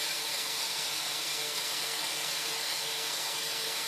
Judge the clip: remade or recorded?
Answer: remade